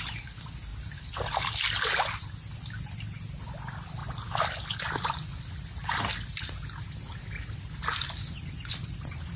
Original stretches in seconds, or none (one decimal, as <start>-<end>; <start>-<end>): 0.0-9.4